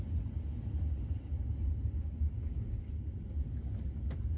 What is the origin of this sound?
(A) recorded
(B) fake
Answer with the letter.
A